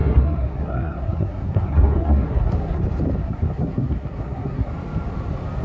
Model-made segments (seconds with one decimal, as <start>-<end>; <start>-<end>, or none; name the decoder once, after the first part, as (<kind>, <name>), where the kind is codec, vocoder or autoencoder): 0.0-2.8 (codec, SNAC); 3.2-4.7